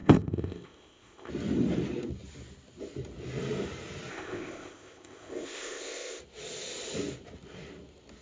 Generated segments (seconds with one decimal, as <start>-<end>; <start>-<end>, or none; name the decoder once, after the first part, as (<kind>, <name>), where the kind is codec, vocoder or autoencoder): 0.0-1.3 (codec, ZipCodec); 4.1-6.2